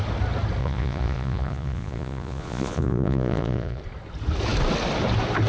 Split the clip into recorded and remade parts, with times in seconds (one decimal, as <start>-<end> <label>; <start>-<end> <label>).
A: 0.0-0.6 recorded; 0.6-3.8 remade; 3.8-5.5 recorded